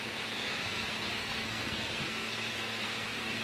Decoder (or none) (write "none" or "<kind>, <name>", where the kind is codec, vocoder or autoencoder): codec, SNAC